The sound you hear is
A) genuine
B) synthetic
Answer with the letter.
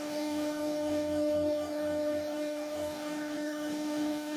B